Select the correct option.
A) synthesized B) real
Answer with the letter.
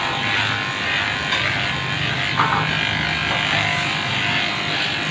B